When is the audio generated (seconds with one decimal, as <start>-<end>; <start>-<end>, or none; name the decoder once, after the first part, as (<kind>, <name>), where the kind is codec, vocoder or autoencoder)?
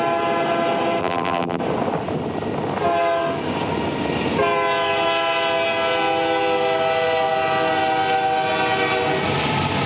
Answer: 1.0-1.6 (vocoder, BigVGAN v2)